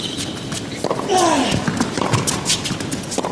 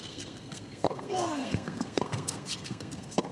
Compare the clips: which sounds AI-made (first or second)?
second